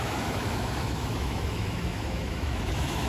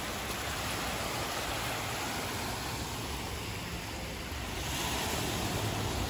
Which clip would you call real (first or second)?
second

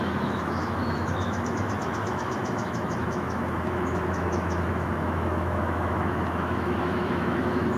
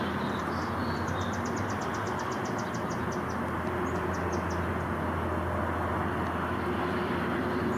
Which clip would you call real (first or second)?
second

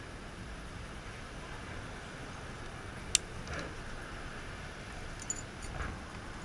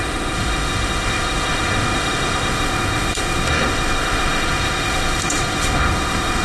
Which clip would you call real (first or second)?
first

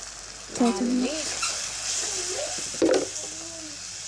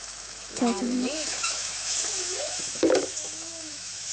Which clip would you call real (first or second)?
first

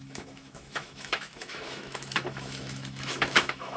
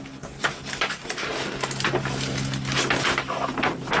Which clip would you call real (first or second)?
second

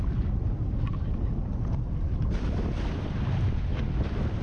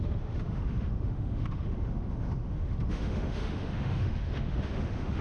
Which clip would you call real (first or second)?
first